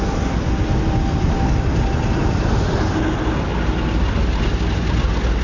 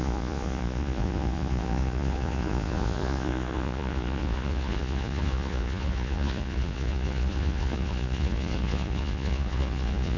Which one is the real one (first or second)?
first